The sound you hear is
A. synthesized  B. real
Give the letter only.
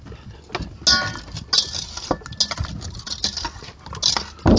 B